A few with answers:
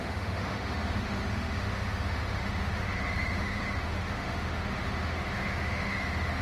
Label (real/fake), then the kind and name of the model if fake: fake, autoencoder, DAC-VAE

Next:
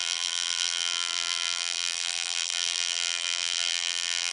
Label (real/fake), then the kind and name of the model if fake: fake, vocoder, BigVGAN v2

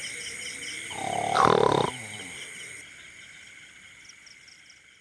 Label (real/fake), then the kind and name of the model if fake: real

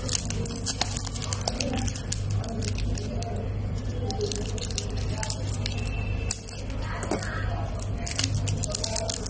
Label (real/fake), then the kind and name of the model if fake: real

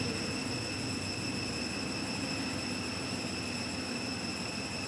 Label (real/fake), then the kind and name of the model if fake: real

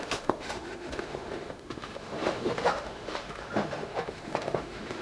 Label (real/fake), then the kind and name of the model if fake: fake, autoencoder, DAC-VAE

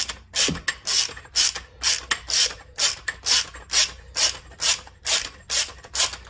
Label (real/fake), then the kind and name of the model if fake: real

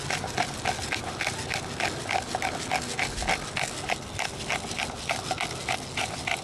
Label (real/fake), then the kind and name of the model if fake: real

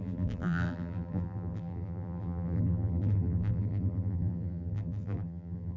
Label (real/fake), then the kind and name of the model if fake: fake, vocoder, BigVGAN v2